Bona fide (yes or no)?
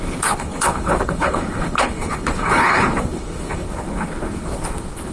no